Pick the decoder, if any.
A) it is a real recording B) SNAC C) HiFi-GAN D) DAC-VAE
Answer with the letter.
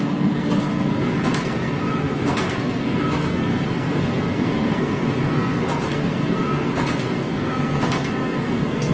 B